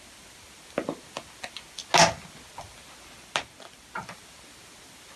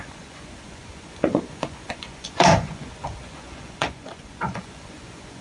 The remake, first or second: second